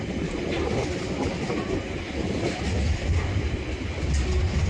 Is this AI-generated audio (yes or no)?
no